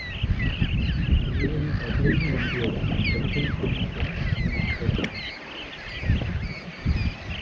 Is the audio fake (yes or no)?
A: no